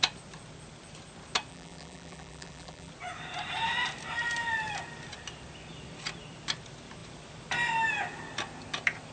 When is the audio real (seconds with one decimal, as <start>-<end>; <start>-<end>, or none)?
0.0-1.5; 2.9-9.1